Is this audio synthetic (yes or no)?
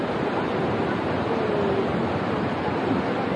no